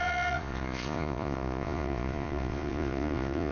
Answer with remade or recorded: remade